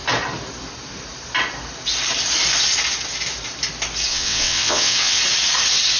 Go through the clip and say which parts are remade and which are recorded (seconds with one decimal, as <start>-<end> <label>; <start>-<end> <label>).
0.0-4.1 recorded; 4.1-5.2 remade; 5.2-6.0 recorded